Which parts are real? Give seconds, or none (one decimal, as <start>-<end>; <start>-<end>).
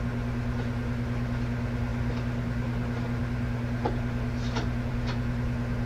0.0-5.9